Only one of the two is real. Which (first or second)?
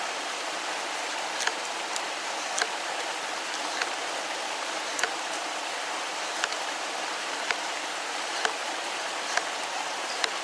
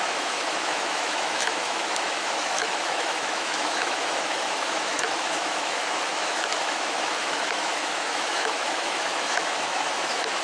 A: first